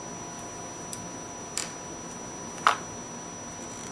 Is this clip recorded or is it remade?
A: recorded